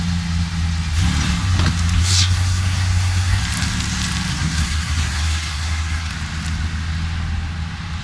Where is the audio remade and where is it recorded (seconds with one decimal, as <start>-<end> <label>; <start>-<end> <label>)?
0.0-2.0 recorded; 2.0-3.4 remade; 3.4-4.3 recorded; 4.3-6.1 remade; 6.1-8.0 recorded